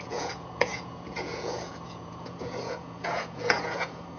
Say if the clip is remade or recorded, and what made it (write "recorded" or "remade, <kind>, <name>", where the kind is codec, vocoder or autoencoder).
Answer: remade, vocoder, Vocos